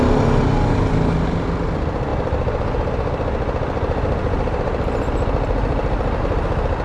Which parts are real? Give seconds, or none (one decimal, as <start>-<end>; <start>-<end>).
0.0-6.8